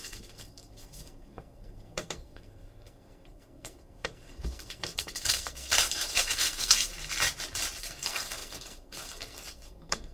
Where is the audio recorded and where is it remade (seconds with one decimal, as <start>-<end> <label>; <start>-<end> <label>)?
0.0-6.9 remade; 6.9-7.8 recorded; 7.8-10.1 remade